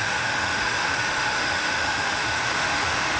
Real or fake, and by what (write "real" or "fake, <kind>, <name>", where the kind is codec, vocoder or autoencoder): fake, autoencoder, DAC-VAE